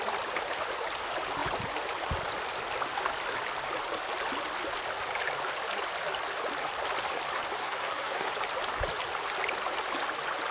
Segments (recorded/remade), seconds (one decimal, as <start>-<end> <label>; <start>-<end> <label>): 0.0-7.6 recorded; 7.6-8.3 remade; 8.3-10.5 recorded